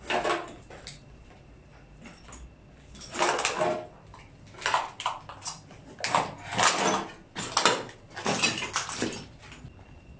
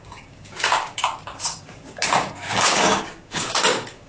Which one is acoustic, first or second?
first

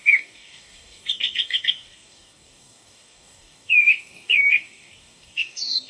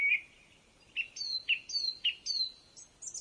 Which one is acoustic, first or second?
second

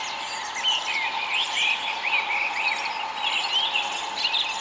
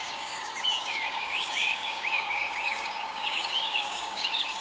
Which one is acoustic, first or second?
first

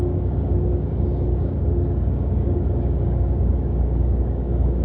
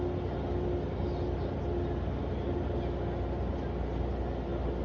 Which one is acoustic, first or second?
second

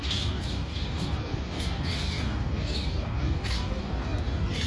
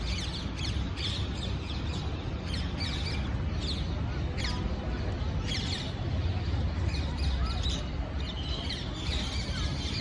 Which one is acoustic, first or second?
second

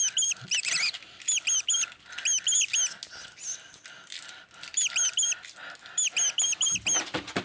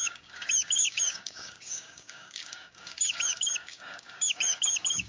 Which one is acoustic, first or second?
first